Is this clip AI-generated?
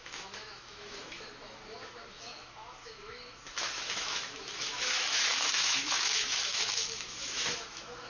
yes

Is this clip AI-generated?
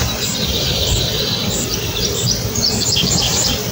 yes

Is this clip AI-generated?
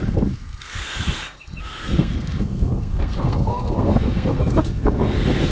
yes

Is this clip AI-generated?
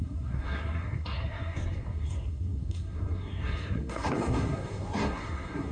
yes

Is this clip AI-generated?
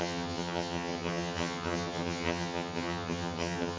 yes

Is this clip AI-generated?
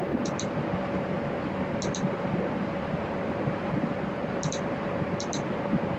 yes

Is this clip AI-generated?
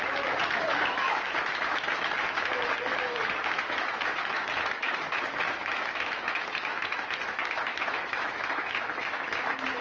yes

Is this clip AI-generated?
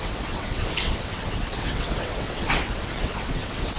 yes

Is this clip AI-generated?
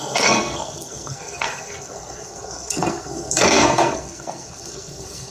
yes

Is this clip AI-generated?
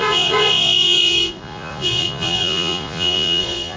yes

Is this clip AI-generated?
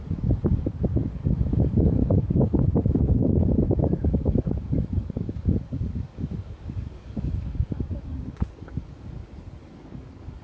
yes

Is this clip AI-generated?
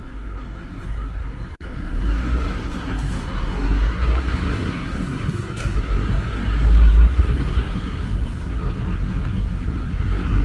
yes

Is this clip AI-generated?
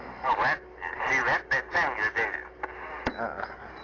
no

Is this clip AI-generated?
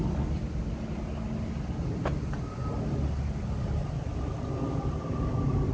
no